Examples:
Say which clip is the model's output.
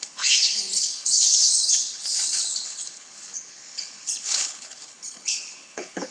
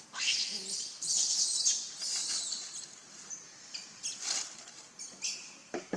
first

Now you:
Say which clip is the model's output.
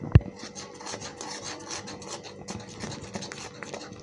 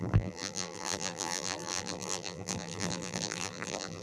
second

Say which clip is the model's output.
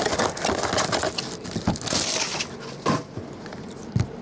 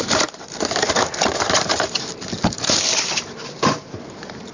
second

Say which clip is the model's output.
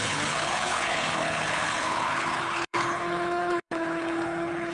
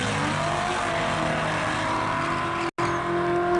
first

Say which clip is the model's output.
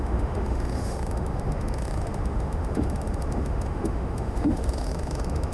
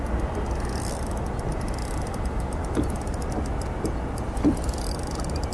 first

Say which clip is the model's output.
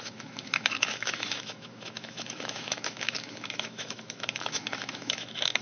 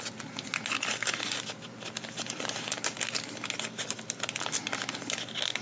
first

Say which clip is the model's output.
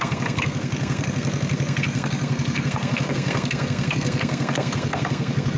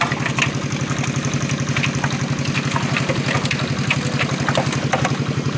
first